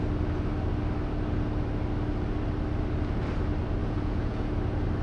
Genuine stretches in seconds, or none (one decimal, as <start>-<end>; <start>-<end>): 0.0-3.8; 4.5-5.0